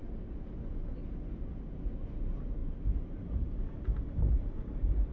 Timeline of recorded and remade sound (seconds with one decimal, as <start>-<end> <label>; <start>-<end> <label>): 0.0-2.6 recorded; 2.6-3.6 remade; 3.6-5.1 recorded